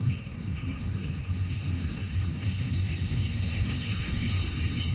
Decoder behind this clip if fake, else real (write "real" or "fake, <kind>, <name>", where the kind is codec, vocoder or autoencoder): fake, codec, SNAC